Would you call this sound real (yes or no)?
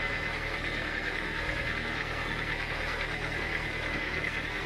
no